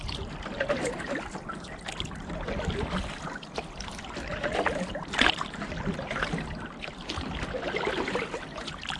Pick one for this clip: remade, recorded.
recorded